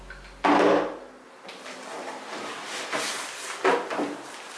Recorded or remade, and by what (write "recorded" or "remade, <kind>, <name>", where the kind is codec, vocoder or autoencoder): recorded